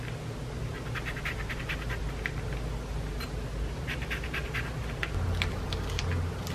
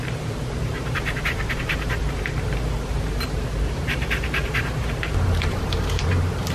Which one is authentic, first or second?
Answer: first